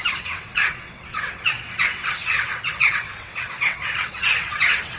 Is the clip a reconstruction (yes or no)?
yes